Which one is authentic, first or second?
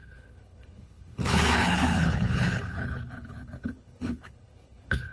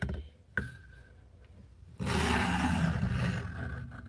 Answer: second